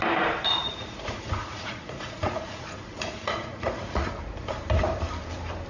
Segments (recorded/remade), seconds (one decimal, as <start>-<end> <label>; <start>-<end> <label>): 0.0-0.6 recorded; 0.6-4.0 remade; 4.0-5.7 recorded